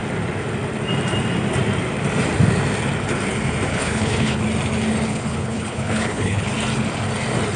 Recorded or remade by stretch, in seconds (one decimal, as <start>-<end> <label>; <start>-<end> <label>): 0.0-3.7 recorded; 3.7-4.4 remade; 4.4-5.1 recorded; 5.1-6.5 remade; 6.5-7.6 recorded